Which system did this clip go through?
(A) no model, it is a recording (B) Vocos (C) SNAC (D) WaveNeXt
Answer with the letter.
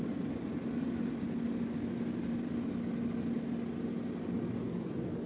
A